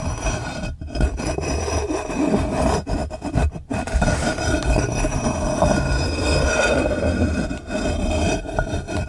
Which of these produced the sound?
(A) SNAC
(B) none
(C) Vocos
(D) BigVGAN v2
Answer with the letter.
B